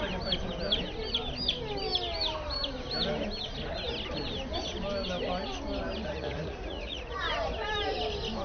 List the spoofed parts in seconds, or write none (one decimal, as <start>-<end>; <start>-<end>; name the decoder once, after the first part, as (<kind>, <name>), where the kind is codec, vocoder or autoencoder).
6.0-7.2 (vocoder, Vocos)